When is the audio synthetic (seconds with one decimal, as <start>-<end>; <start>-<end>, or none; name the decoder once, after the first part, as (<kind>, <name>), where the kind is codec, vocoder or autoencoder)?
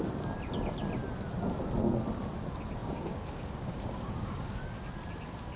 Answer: 2.8-4.6 (codec, DAC)